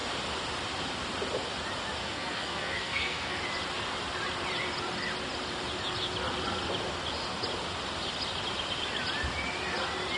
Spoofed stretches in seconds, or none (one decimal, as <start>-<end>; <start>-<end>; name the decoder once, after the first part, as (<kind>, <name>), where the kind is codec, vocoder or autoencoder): 2.0-3.4 (codec, SNAC)